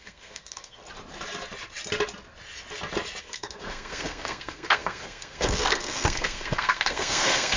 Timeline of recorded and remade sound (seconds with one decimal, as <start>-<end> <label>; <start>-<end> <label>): 0.0-0.8 remade; 0.8-3.2 recorded; 3.2-7.6 remade

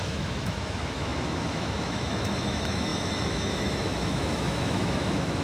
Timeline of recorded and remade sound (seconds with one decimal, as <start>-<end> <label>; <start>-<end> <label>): 0.0-5.4 remade

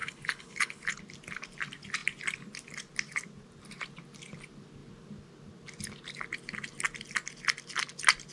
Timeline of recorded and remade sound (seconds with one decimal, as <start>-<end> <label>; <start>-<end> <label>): 0.0-1.0 remade; 1.0-8.3 recorded

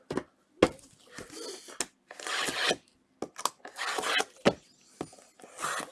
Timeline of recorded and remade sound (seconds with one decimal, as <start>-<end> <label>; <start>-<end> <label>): 0.0-5.9 recorded

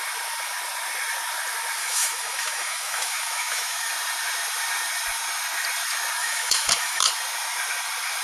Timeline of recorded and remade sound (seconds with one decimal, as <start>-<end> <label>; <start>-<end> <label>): 0.0-1.8 recorded; 1.8-3.9 remade; 3.9-6.2 recorded; 6.2-7.1 remade; 7.1-8.2 recorded

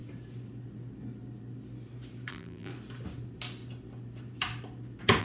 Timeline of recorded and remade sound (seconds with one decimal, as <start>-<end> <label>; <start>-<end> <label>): 0.0-2.3 recorded; 2.3-2.7 remade; 2.7-5.2 recorded

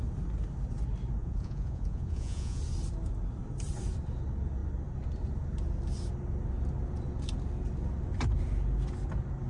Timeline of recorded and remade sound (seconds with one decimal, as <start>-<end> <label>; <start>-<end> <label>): 0.0-1.2 recorded; 1.2-2.6 remade; 2.6-9.5 recorded

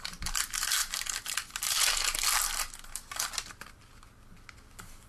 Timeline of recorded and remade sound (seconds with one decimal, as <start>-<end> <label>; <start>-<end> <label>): 0.0-5.1 recorded